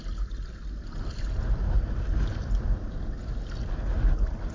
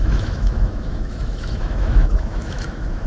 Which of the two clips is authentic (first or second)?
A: first